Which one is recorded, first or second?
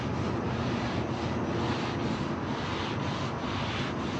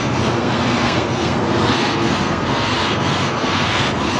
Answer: first